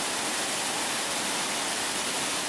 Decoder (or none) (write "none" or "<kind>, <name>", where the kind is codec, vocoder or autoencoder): none